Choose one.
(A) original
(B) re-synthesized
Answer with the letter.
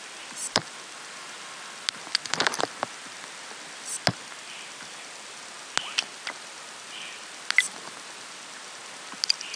A